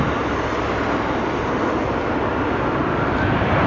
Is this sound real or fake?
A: real